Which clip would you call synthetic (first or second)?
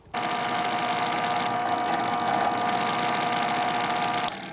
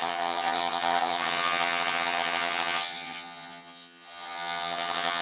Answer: second